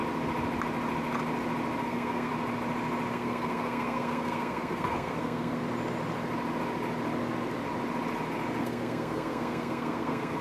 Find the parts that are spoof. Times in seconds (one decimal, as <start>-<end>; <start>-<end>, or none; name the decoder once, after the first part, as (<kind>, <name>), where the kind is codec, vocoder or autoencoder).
1.8-2.3 (codec, SNAC); 3.1-5.6; 8.6-10.4